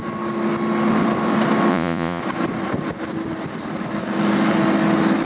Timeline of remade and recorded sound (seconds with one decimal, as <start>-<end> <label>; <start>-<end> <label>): 0.0-1.7 recorded; 1.7-2.2 remade; 2.2-5.3 recorded

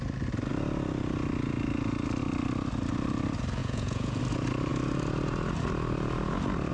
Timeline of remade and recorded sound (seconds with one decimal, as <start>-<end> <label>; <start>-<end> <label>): 0.0-3.6 recorded; 3.6-4.2 remade; 4.2-6.7 recorded